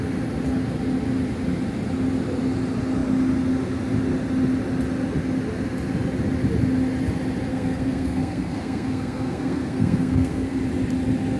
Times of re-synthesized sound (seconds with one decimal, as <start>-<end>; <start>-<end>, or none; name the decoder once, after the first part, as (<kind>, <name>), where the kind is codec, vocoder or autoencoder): 7.5-10.6 (codec, SNAC)